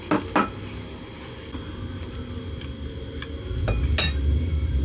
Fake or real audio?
real